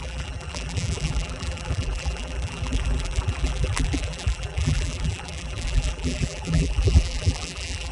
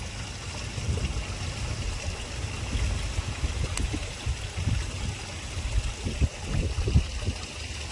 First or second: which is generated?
first